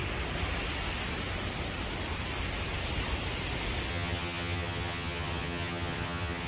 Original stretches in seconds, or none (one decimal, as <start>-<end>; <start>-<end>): 0.0-3.9